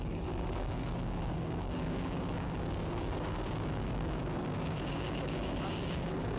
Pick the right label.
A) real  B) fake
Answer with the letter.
B